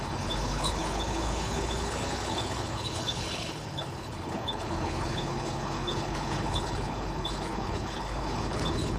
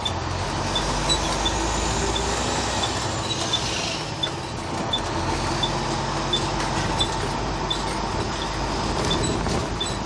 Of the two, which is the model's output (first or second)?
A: first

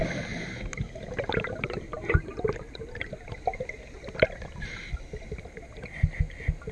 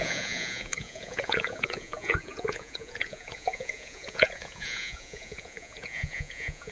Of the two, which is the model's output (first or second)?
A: second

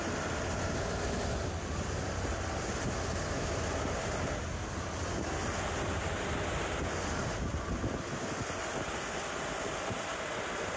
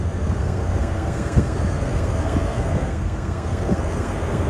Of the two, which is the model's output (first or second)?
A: second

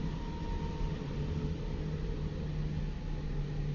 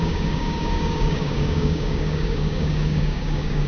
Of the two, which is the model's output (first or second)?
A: second